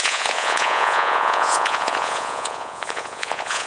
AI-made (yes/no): yes